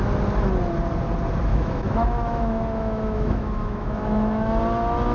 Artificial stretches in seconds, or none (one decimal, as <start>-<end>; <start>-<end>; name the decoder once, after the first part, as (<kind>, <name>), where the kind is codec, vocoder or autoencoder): 1.5-4.6 (autoencoder, DAC-VAE)